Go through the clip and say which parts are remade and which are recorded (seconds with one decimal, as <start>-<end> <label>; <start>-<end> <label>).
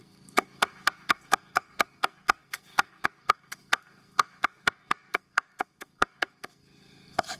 0.0-7.4 remade